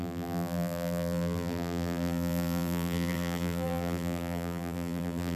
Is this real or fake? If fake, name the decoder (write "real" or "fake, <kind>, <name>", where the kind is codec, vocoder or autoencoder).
fake, vocoder, BigVGAN v2